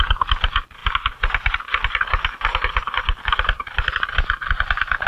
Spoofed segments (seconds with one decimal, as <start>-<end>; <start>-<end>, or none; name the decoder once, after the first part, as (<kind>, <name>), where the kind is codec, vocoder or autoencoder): 0.8-3.9 (vocoder, BigVGAN v2)